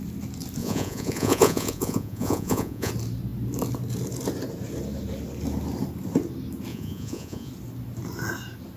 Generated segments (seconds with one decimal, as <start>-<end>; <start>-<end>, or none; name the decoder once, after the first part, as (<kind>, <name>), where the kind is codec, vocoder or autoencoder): 0.6-2.9 (vocoder, Vocos); 6.7-7.5